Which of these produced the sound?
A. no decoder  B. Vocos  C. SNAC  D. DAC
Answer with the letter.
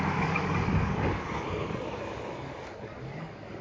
D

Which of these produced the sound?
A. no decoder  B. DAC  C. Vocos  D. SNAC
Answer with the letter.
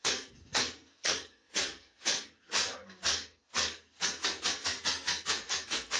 D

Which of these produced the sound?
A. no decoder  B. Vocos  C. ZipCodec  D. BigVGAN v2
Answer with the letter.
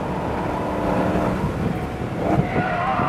A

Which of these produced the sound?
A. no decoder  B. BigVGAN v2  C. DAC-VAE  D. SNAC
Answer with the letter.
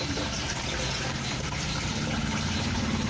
B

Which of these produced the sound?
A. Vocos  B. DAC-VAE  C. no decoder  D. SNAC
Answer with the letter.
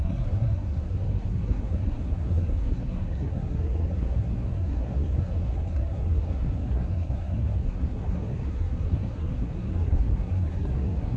D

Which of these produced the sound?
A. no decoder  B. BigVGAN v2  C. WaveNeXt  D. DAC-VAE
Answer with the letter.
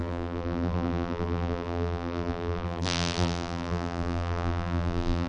B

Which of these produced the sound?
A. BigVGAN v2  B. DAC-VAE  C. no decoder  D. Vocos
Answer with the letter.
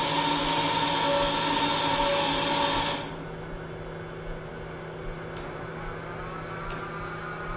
C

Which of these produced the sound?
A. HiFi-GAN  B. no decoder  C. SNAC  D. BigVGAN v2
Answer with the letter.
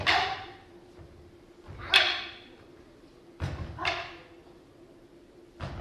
B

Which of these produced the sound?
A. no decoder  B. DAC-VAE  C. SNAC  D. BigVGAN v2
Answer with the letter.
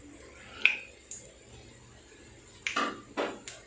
A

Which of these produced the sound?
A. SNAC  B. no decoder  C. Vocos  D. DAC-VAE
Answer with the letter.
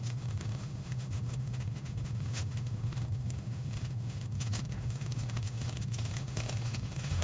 D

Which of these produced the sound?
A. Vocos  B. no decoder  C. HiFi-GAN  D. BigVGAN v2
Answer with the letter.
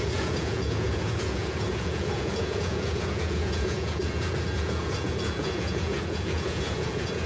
A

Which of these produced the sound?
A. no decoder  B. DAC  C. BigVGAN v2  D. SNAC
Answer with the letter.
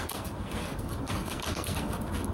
D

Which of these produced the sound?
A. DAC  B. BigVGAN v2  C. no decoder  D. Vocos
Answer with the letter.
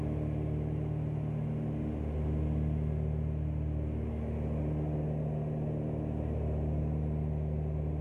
C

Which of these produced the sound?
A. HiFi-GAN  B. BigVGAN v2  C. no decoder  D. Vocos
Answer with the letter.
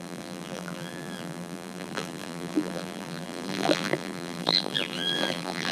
B